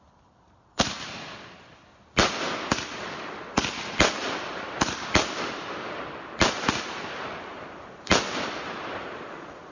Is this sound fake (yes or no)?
no